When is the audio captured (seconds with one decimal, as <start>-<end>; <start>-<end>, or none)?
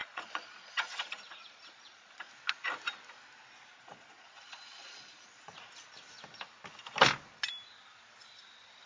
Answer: 2.3-3.7; 5.7-8.9